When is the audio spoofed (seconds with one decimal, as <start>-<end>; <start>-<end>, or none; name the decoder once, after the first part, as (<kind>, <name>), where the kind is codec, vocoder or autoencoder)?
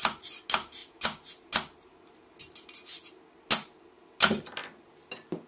none